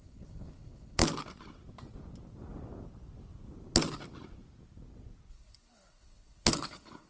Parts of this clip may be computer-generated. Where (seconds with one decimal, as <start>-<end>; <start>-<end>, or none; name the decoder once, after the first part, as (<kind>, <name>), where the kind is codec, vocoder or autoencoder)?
0.0-1.0 (codec, HILCodec); 5.3-7.1